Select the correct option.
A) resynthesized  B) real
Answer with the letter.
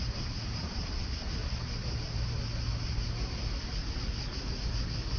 B